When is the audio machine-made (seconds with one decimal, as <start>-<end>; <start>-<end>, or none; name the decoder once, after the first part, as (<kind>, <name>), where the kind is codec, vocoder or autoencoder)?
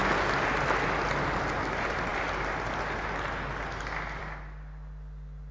none